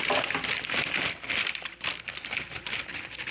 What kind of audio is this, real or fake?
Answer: real